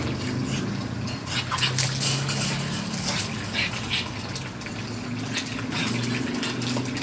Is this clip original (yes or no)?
yes